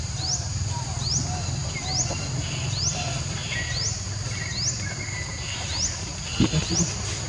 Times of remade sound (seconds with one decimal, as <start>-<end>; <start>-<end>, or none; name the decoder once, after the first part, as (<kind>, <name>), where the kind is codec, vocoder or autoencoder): none